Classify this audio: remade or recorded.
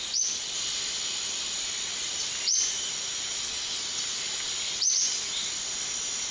recorded